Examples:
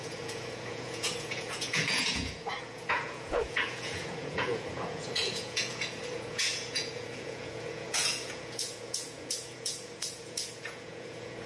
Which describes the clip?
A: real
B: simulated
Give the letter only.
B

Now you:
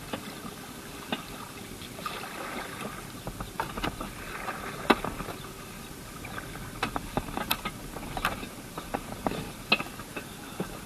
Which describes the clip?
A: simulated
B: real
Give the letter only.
B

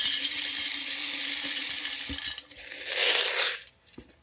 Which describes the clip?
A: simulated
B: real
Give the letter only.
B